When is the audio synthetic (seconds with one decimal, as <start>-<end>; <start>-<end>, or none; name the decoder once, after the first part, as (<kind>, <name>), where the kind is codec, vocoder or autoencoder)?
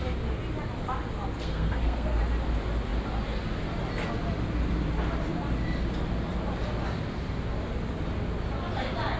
1.4-2.2 (codec, SNAC)